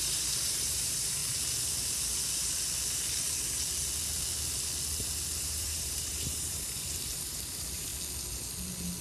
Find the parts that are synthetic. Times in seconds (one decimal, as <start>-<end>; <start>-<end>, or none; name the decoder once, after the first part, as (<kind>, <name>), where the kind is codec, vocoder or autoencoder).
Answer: 0.0-1.2 (vocoder, BigVGAN v2); 5.4-7.9